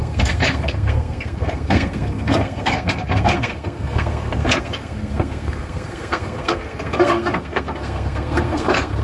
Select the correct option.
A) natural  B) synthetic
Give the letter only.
B